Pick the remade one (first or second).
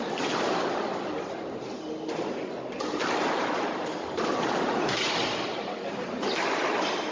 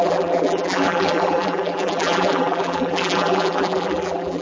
second